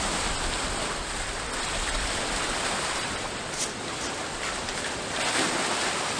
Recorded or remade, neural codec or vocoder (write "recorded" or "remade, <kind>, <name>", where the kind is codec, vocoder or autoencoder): recorded